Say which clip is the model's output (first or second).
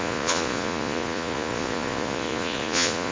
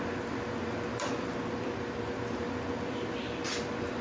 first